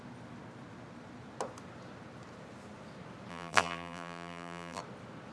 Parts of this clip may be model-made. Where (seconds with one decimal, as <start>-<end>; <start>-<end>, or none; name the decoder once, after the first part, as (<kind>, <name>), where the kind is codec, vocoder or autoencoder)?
3.3-4.8 (vocoder, BigVGAN v2)